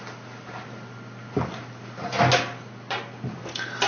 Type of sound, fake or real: real